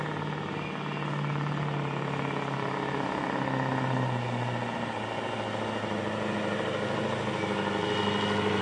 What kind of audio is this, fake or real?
real